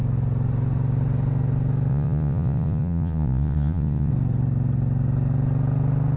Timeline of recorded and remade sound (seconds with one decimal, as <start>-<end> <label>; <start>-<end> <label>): 0.0-1.9 recorded; 1.9-4.1 remade; 4.1-6.2 recorded